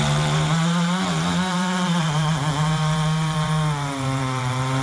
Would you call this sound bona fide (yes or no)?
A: no